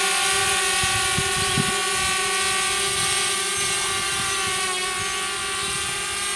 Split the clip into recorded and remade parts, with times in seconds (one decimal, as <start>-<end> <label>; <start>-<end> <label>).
0.0-6.4 recorded